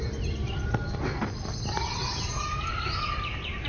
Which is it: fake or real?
real